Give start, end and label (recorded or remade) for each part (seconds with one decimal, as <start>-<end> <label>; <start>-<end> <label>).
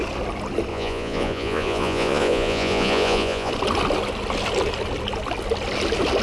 0.0-0.7 recorded; 0.7-3.5 remade; 3.5-6.2 recorded